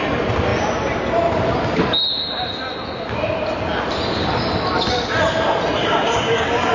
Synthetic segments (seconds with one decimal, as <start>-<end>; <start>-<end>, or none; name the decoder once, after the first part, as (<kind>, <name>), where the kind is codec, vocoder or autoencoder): 5.8-6.7 (codec, DAC)